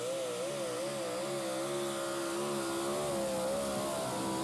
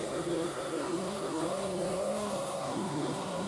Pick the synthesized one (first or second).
second